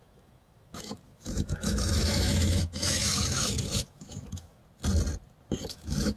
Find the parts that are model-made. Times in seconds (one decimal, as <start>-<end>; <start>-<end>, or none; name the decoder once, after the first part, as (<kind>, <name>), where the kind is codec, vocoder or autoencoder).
0.0-4.6 (autoencoder, DAC-VAE); 5.7-6.2